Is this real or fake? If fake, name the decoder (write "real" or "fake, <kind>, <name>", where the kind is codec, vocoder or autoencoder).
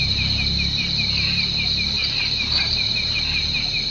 real